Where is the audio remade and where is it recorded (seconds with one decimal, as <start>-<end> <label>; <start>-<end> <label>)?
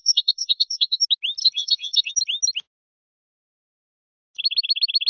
0.0-1.0 remade; 1.0-1.4 recorded; 1.4-2.1 remade; 2.1-5.1 recorded